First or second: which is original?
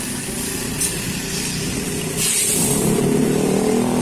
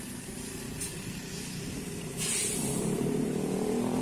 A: first